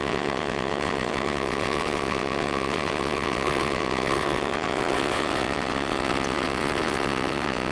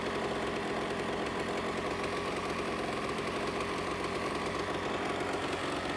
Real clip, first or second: second